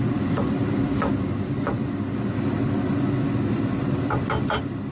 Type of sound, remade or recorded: remade